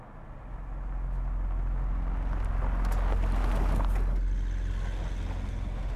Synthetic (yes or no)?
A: no